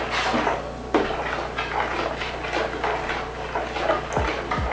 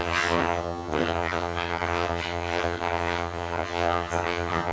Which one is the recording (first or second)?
first